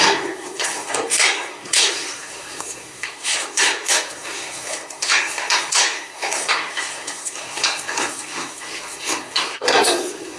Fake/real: fake